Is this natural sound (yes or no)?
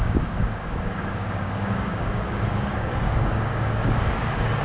no